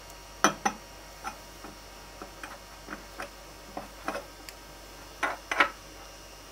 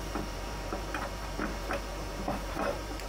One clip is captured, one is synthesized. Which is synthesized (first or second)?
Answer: second